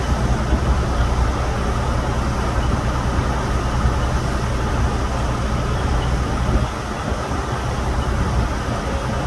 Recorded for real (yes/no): yes